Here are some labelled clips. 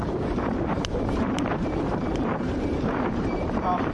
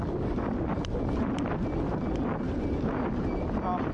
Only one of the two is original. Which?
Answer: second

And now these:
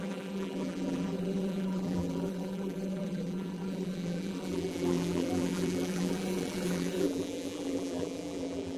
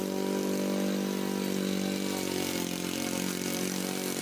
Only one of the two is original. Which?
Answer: second